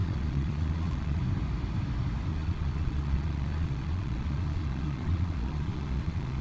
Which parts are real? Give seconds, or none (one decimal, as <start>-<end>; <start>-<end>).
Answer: 1.2-2.3